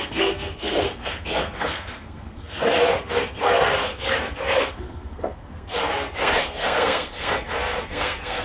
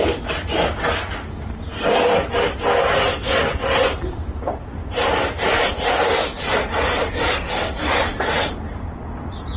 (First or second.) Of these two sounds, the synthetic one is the first